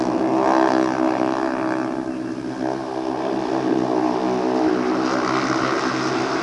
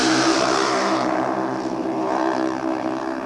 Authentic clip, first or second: first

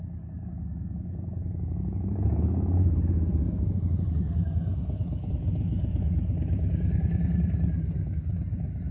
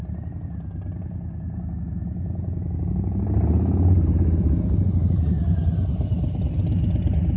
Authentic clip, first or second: second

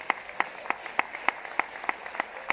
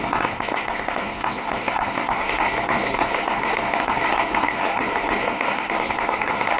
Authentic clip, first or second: first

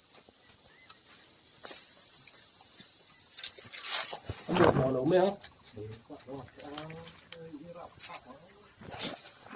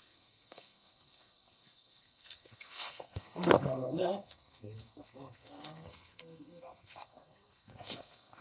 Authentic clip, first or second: first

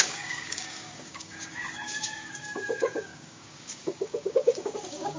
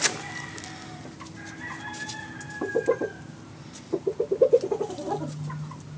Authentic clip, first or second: second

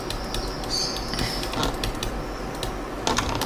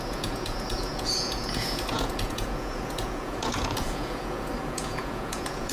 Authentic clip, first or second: first